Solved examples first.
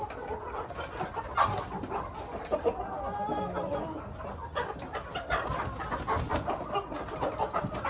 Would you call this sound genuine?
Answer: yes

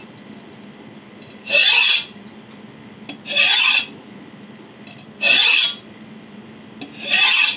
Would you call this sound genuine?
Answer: yes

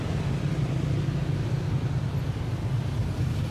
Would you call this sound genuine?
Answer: yes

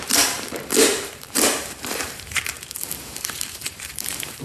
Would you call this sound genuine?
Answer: no